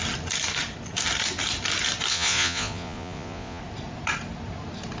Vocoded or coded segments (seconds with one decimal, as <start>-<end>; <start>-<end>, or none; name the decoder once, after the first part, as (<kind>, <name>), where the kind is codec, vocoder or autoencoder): 2.1-3.6 (vocoder, Vocos)

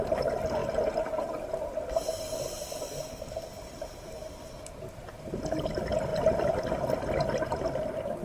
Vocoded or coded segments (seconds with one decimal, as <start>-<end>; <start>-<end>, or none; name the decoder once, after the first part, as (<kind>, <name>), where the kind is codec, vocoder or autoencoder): 0.6-3.9 (vocoder, BigVGAN v2); 6.1-6.7